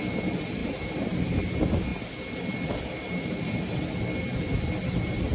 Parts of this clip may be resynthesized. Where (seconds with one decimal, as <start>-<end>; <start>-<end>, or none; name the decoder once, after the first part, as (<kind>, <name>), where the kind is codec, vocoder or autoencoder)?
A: none